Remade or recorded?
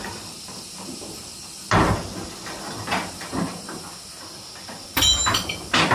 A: recorded